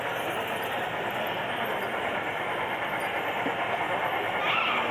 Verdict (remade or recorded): recorded